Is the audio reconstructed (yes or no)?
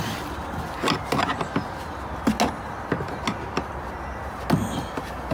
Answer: no